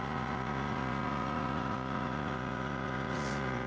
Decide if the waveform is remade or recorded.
remade